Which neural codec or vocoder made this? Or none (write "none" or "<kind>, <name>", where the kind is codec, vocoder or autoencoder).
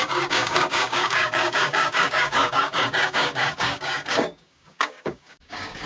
codec, DAC